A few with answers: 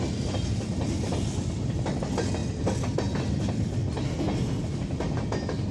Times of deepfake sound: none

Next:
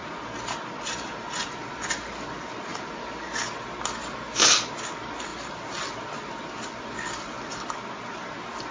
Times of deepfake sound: 2.7-3.2 (vocoder, BigVGAN v2)

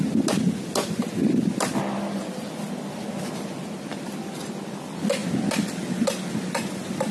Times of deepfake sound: none

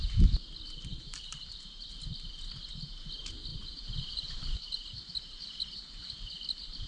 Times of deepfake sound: 0.9-1.9 (vocoder, BigVGAN v2); 3.5-6.1